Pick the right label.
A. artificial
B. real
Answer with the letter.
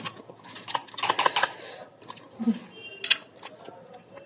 B